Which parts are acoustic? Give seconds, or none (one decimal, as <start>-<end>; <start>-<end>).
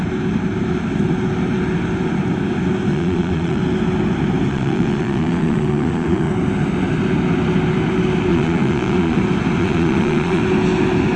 0.0-2.9; 3.6-4.5; 6.3-8.3; 9.2-9.6; 10.4-11.2